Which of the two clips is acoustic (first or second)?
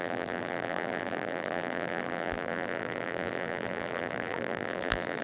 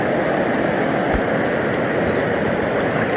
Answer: second